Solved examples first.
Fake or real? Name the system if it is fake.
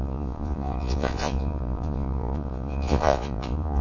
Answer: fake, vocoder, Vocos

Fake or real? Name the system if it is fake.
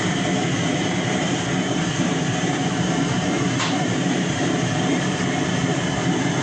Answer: fake, vocoder, BigVGAN v2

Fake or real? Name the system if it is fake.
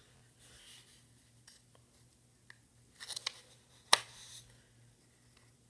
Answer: real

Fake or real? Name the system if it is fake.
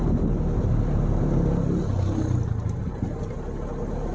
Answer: real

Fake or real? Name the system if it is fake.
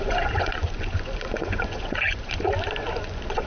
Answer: fake, vocoder, Vocos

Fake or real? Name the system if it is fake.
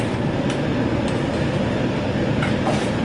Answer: real